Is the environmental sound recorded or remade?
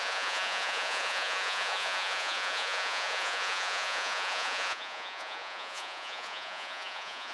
remade